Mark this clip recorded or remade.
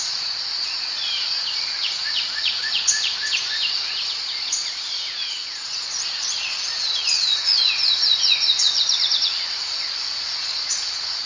remade